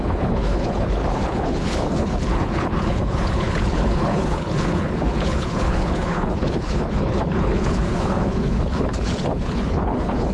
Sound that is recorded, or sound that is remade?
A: remade